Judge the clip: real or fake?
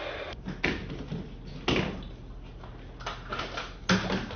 real